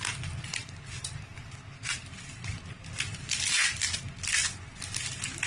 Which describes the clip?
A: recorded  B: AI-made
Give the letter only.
A